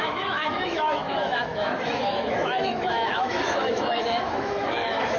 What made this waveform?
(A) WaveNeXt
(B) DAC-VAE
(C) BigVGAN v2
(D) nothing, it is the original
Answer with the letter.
B